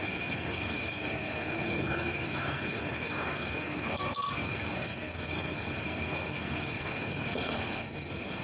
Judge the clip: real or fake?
fake